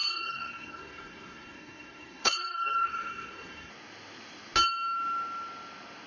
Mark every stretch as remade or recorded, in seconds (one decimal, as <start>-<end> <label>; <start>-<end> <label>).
0.0-3.7 remade; 3.7-6.1 recorded